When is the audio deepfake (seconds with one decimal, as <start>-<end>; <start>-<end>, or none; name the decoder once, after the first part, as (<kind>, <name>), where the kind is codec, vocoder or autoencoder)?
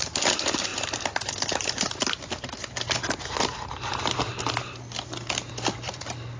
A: none